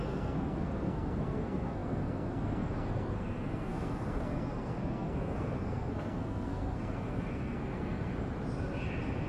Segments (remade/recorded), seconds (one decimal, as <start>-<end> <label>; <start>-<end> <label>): 0.0-8.1 remade; 8.1-9.3 recorded